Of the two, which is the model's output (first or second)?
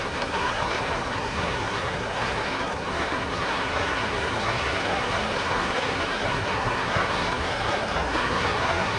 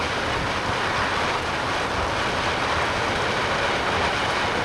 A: first